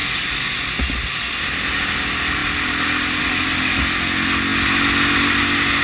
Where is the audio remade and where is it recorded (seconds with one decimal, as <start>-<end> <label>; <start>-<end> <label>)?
0.0-5.8 recorded